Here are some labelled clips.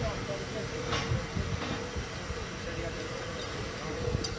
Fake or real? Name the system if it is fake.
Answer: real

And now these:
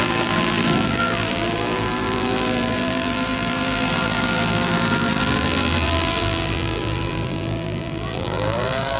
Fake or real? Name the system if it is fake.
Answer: fake, vocoder, BigVGAN v2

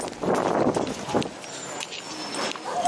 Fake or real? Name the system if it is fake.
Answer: real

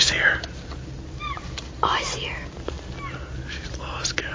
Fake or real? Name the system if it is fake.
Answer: real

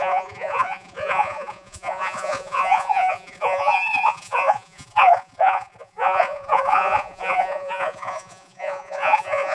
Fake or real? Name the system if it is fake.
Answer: fake, vocoder, Vocos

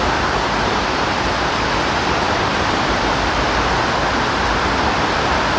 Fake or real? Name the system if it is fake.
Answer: fake, vocoder, BigVGAN v2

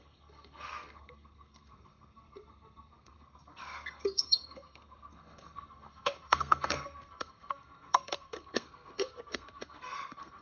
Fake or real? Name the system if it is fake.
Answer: fake, codec, SNAC